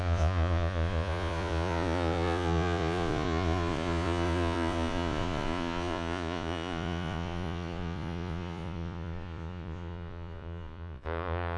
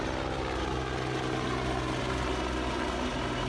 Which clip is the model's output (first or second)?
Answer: first